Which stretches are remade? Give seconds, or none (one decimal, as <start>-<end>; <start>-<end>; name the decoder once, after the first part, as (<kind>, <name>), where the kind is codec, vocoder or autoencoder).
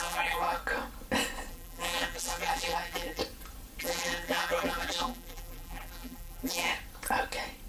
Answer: 0.0-0.6 (vocoder, BigVGAN v2); 1.5-3.2; 3.8-6.7